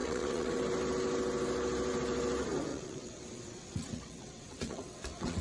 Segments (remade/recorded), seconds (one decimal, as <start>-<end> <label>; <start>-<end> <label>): 0.0-0.6 remade; 0.6-2.7 recorded; 2.7-5.4 remade